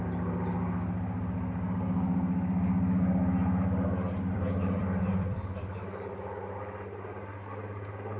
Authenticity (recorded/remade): remade